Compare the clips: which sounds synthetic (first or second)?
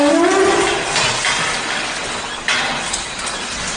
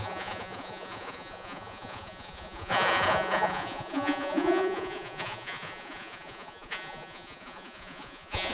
second